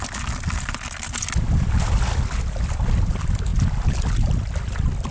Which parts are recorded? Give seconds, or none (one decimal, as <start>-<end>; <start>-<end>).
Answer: 0.0-5.1